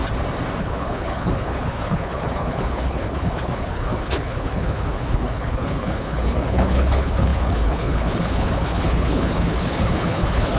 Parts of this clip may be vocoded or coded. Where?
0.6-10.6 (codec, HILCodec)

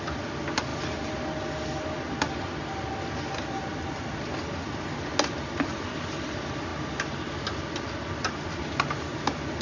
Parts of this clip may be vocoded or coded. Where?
none

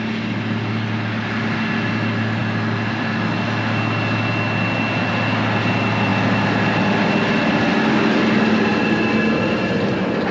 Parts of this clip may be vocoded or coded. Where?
none

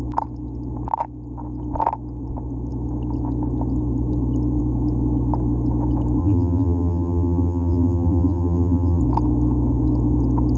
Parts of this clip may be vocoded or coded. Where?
6.2-9.0 (vocoder, BigVGAN v2)